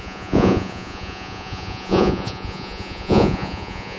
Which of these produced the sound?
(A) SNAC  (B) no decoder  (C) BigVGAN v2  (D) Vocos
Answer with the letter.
D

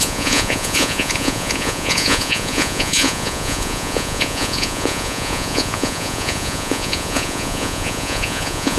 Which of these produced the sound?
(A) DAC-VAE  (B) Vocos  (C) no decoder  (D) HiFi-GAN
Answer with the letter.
B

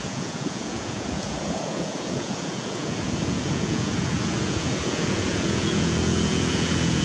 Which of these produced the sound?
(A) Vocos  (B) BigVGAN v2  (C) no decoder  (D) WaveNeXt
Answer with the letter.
A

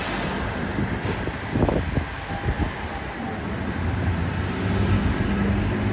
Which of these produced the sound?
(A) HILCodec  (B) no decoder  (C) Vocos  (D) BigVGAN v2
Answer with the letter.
B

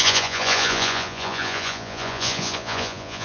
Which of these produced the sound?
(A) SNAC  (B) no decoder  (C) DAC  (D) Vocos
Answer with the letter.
D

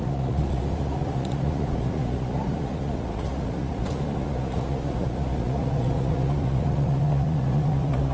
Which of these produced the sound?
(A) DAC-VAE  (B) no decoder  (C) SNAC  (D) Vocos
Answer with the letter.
D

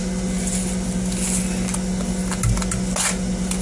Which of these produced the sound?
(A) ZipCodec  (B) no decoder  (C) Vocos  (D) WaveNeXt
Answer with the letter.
B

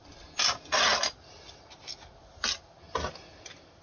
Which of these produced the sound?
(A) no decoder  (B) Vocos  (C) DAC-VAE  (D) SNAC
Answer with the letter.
A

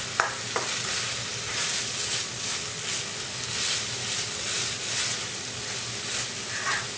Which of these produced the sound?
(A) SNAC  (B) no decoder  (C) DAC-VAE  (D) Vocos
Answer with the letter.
B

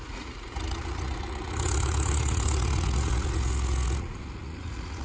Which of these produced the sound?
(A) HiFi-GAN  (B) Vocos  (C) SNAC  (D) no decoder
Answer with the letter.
B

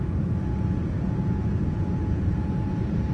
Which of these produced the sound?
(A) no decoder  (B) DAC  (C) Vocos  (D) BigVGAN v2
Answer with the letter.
C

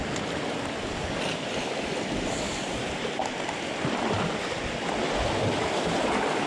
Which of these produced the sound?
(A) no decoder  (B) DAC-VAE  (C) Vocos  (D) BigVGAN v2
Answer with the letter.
A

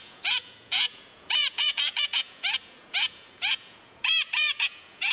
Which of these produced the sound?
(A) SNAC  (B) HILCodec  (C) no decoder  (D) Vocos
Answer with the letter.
D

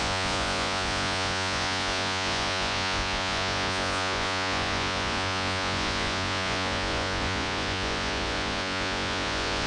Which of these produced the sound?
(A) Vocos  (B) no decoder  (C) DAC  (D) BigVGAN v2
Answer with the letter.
A